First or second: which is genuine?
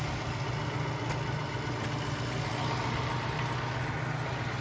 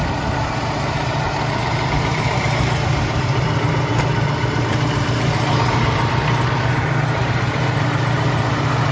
first